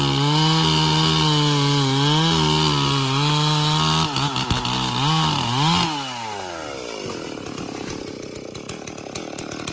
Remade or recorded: recorded